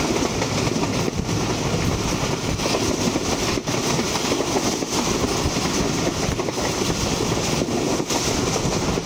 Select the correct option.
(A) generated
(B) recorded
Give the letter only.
B